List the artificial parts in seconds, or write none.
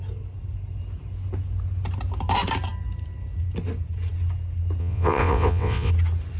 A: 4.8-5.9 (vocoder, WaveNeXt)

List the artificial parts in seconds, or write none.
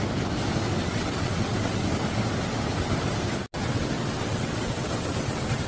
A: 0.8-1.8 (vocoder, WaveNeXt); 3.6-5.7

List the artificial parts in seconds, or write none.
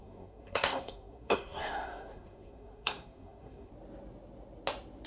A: 0.0-3.7 (codec, SNAC)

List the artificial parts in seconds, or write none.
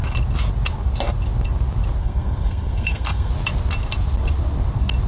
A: 2.0-3.3 (codec, SNAC)